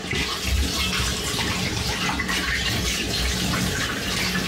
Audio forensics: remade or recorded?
recorded